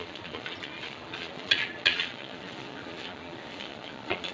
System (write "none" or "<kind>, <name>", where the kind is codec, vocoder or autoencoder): vocoder, Vocos